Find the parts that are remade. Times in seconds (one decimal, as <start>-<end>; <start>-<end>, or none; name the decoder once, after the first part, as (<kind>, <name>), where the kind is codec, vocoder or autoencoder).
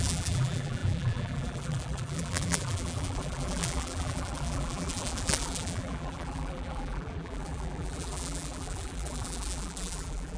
0.0-10.4 (vocoder, BigVGAN v2)